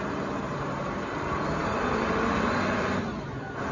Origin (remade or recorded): recorded